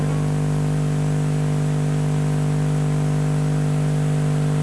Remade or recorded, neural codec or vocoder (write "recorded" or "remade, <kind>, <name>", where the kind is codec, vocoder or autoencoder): recorded